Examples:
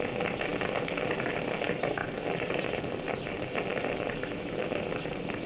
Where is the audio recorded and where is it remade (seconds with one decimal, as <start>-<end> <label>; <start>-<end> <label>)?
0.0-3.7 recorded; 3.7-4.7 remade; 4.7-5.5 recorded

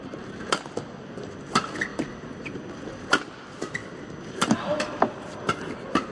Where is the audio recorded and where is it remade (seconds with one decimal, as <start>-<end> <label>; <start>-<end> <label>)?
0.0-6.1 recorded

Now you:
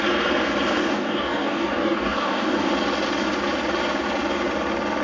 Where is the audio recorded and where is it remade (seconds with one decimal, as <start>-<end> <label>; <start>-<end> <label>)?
0.0-0.8 recorded; 0.8-2.7 remade; 2.7-5.0 recorded

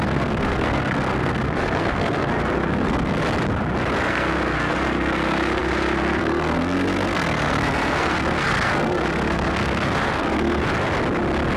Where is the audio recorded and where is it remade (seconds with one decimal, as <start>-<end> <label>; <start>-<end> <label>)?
0.0-3.2 remade; 3.2-4.0 recorded; 4.0-10.6 remade; 10.6-11.6 recorded

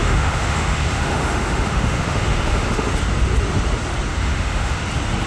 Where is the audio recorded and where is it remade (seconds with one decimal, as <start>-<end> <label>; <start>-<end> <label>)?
0.0-2.9 remade; 2.9-4.1 recorded; 4.1-4.8 remade; 4.8-5.3 recorded

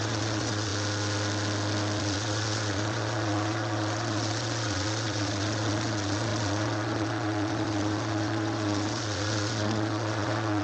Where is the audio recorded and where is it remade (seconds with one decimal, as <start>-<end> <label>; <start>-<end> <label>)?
0.0-0.7 remade; 0.7-2.0 recorded; 2.0-10.6 remade

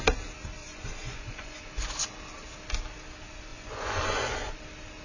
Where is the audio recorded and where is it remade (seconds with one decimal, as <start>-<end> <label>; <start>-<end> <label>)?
0.0-0.6 recorded; 0.6-1.6 remade; 1.6-3.5 recorded; 3.5-4.5 remade; 4.5-5.0 recorded

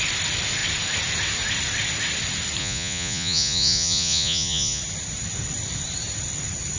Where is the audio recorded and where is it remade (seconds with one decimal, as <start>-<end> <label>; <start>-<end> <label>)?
0.0-2.6 recorded; 2.6-4.8 remade; 4.8-6.8 recorded